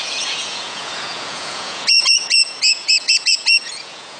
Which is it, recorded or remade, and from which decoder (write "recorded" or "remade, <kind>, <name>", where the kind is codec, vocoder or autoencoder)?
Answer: remade, vocoder, Vocos